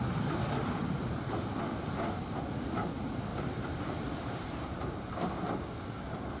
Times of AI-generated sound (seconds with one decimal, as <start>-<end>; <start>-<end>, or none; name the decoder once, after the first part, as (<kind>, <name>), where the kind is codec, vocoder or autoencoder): 0.6-1.4 (vocoder, BigVGAN v2); 3.3-5.3